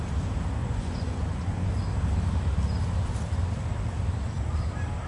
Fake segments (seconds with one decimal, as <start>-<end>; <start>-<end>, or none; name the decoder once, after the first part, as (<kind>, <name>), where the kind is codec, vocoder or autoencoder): 0.6-1.7 (vocoder, Vocos)